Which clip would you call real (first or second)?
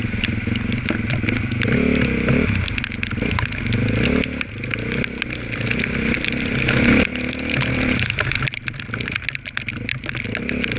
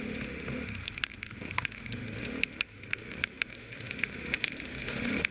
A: first